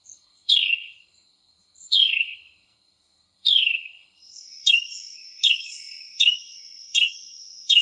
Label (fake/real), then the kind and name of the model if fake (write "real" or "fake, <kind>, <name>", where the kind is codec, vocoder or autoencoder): fake, codec, SNAC